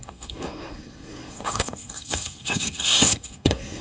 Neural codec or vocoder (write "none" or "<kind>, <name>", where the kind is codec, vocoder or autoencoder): codec, SNAC